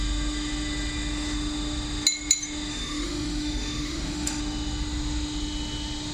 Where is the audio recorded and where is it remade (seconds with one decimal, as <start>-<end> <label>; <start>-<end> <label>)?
0.0-2.7 recorded; 2.7-4.4 remade; 4.4-6.1 recorded